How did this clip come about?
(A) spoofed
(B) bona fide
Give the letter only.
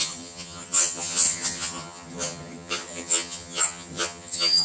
A